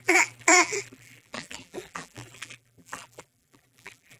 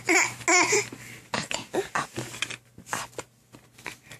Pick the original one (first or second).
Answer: second